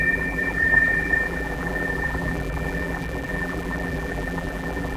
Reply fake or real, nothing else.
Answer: fake